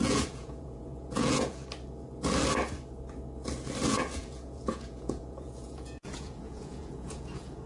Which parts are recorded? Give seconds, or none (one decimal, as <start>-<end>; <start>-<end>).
1.6-3.9

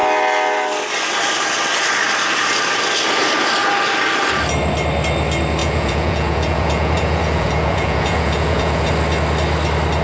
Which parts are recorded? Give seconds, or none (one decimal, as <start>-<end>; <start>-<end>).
0.0-5.6; 8.9-10.0

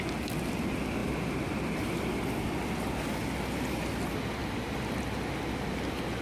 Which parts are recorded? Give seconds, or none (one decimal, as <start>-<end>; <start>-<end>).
0.0-6.2

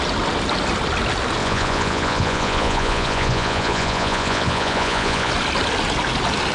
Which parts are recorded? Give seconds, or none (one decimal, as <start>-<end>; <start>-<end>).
0.0-1.4; 5.3-6.5

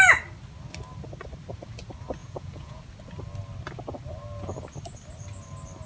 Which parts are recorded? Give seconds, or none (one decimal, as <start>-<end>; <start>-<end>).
0.0-2.2; 2.8-5.9